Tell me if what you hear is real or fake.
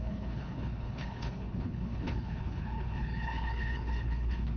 fake